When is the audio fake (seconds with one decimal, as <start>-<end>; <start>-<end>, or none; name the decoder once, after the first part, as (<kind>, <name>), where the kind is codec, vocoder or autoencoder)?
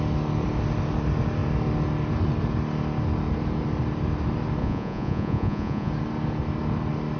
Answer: 4.6-5.9 (vocoder, Vocos)